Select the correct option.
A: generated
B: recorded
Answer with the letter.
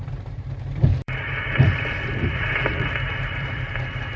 A